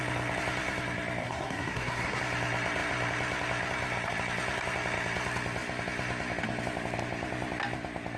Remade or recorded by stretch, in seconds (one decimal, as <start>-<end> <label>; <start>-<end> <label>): 0.0-1.2 recorded; 1.2-2.2 remade; 2.2-8.2 recorded